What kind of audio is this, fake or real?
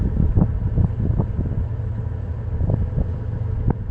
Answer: real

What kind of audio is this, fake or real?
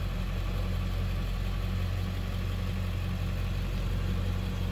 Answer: real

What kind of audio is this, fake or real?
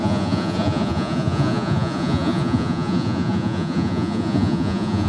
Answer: fake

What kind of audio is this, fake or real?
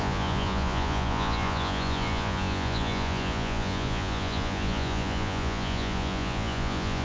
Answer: fake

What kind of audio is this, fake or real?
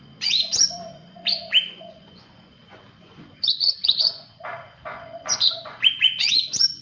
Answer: fake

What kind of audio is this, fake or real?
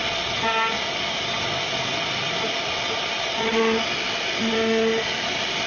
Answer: real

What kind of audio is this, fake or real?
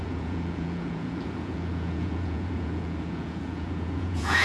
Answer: fake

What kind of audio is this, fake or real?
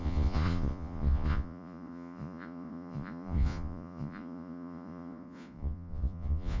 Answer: fake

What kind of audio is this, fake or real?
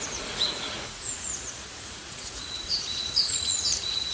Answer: fake